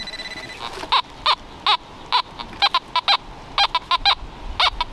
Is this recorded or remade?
recorded